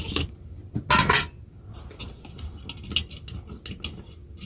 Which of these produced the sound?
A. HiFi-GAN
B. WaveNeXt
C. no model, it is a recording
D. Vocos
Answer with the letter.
C